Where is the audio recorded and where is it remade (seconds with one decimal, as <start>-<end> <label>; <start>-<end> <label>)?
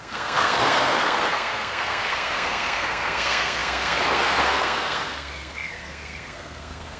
0.0-7.0 remade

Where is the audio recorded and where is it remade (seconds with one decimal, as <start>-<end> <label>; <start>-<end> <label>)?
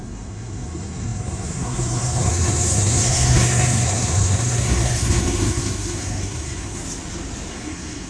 0.0-6.8 remade; 6.8-7.5 recorded; 7.5-8.1 remade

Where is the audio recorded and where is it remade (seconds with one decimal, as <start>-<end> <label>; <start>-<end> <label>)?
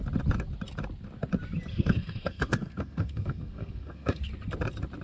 0.0-1.7 recorded; 1.7-4.2 remade; 4.2-5.0 recorded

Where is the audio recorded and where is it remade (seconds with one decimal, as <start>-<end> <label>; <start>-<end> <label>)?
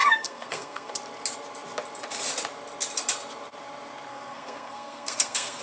0.0-0.9 remade; 0.9-4.1 recorded; 4.1-5.6 remade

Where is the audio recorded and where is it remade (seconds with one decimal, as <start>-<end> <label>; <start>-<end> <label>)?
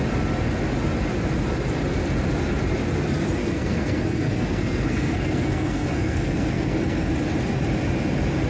0.0-3.4 recorded; 3.4-7.1 remade; 7.1-8.5 recorded